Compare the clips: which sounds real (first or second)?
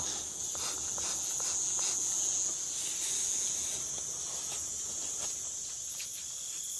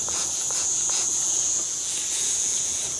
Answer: first